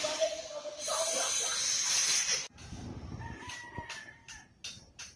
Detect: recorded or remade remade